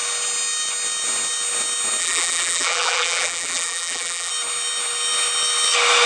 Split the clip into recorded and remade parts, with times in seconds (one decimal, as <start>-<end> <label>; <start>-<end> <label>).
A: 0.0-2.0 recorded; 2.0-4.3 remade; 4.3-6.1 recorded